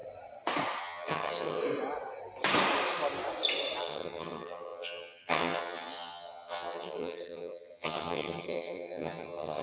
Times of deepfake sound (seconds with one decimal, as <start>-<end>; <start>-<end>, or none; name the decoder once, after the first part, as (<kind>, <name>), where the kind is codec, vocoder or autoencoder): 0.8-1.6 (vocoder, HiFi-GAN); 3.8-9.6